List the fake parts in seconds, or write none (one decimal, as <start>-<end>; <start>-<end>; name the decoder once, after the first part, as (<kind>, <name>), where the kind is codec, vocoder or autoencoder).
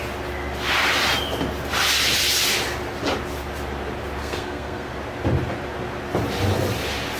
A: 4.2-4.9 (codec, SNAC)